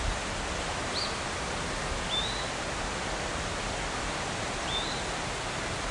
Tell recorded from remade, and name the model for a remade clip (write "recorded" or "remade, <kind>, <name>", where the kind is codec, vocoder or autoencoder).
recorded